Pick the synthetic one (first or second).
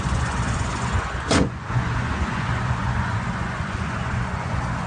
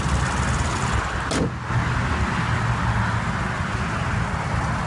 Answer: first